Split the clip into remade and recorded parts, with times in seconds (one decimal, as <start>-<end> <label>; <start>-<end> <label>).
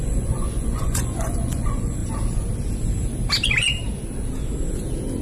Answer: 0.0-2.0 remade; 2.0-5.2 recorded